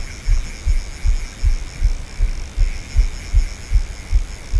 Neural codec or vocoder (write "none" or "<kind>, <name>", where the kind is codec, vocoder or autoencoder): none